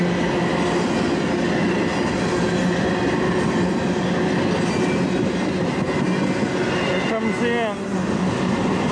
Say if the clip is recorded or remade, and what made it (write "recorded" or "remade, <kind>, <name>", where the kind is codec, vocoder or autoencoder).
recorded